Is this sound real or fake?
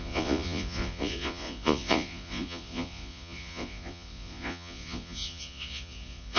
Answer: fake